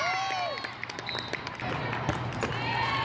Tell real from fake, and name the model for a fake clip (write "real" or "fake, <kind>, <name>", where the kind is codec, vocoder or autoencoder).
real